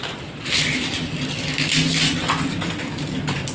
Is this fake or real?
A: real